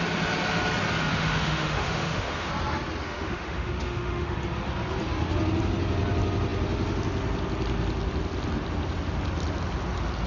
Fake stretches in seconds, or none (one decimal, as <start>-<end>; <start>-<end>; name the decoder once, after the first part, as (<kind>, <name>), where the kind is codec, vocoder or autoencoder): 1.1-2.5 (autoencoder, DAC-VAE); 3.0-4.3